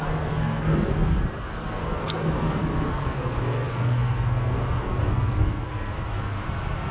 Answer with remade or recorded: remade